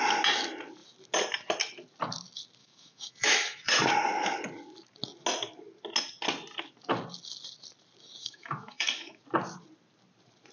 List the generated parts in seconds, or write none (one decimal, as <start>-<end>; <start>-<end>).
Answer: 2.6-3.7; 8.2-9.2